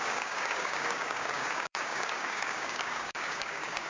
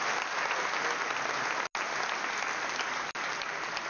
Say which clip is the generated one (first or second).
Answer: first